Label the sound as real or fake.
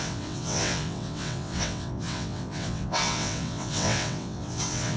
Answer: fake